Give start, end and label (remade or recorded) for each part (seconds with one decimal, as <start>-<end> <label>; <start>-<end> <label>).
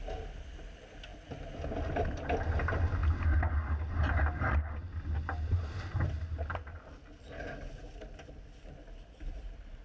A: 0.0-9.8 recorded